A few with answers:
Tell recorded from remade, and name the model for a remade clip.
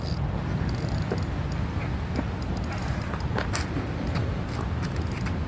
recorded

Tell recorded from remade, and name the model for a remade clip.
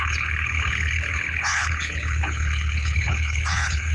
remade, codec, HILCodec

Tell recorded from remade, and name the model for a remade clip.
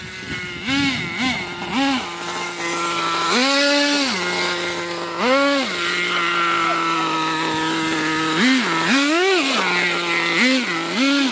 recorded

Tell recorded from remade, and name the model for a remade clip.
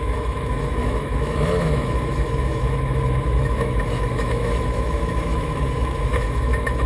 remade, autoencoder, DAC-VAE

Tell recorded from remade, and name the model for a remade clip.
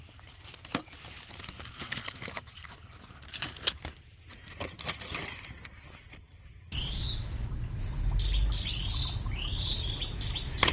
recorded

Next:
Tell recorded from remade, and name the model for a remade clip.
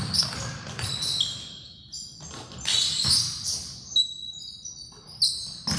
recorded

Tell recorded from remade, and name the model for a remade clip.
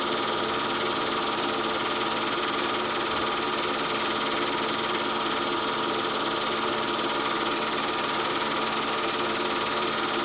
recorded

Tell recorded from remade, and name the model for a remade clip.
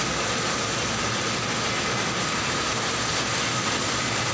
recorded